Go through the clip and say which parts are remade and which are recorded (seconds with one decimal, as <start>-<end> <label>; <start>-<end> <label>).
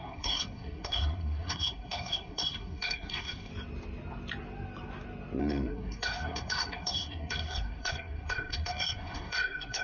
0.0-3.5 remade; 3.5-5.4 recorded; 5.4-9.8 remade